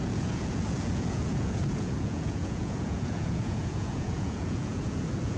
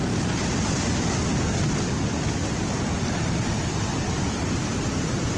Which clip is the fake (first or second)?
first